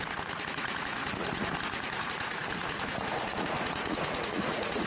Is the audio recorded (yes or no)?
no